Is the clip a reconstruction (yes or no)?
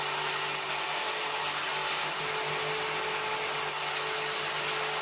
no